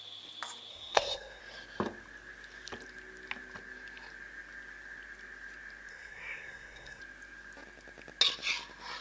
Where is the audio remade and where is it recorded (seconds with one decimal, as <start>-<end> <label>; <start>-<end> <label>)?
0.0-0.7 recorded; 0.7-1.4 remade; 1.4-5.9 recorded; 5.9-7.0 remade; 7.0-9.0 recorded